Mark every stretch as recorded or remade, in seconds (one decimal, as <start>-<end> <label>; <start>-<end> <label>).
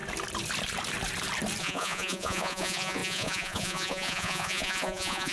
0.0-1.6 recorded; 1.6-5.3 remade